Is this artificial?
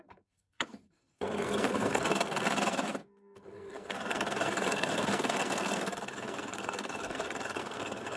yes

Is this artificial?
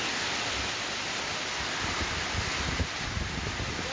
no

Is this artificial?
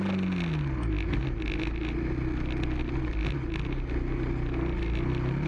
no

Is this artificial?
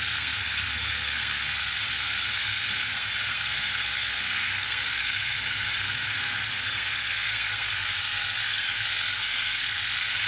yes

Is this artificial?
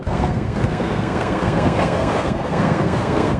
yes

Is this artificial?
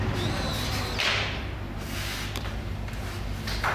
no